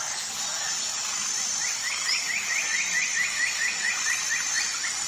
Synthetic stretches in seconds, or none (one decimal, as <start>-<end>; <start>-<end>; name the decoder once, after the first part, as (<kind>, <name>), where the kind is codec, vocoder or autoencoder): none